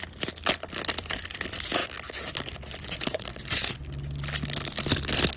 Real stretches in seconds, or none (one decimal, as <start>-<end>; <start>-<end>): 0.0-2.8; 3.8-5.4